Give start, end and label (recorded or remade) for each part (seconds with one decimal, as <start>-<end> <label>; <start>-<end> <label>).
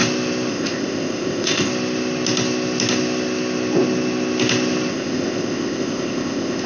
0.0-0.5 recorded; 0.5-1.7 remade; 1.7-4.9 recorded; 4.9-6.7 remade